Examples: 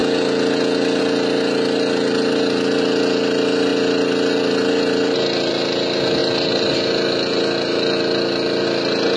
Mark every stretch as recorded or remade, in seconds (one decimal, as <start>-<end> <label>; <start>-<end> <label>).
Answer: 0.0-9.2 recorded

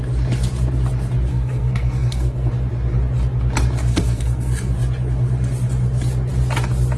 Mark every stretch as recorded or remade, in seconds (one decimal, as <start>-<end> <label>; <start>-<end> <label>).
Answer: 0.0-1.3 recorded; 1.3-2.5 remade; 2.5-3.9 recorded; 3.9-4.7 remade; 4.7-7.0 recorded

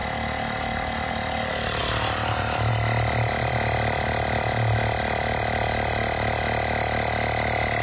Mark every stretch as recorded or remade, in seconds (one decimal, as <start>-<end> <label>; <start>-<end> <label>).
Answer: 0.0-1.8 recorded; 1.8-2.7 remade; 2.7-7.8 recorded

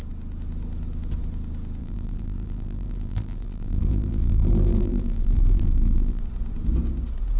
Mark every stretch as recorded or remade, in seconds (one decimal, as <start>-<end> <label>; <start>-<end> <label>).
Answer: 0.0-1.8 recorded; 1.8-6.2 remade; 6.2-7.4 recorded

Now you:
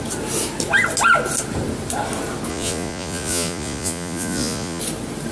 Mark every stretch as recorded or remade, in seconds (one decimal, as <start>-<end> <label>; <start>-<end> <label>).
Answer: 0.0-2.5 recorded; 2.5-4.8 remade; 4.8-5.3 recorded

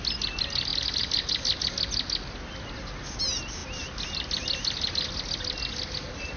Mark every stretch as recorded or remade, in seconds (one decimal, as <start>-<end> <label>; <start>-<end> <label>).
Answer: 0.0-6.4 recorded